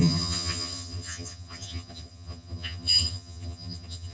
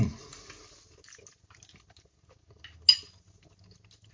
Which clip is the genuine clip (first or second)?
second